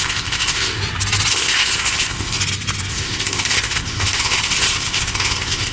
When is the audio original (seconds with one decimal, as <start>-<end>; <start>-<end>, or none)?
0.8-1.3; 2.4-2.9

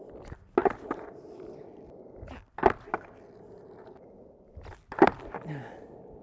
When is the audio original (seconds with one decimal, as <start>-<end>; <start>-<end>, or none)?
0.0-6.2

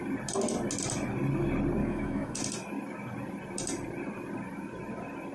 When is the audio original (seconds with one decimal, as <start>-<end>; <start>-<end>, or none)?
0.0-1.8; 2.4-5.3